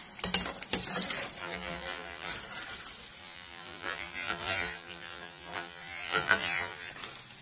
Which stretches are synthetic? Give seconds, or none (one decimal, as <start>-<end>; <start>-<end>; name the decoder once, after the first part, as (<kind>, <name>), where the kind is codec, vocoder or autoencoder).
1.4-2.3 (vocoder, BigVGAN v2); 3.2-6.9